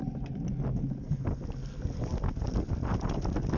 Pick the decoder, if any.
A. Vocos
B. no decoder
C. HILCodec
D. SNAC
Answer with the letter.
B